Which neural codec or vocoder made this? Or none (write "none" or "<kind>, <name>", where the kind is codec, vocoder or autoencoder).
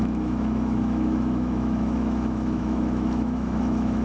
autoencoder, DAC-VAE